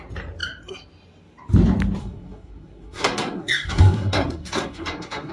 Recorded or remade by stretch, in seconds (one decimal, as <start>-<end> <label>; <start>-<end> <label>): 0.0-2.0 recorded; 2.0-5.3 remade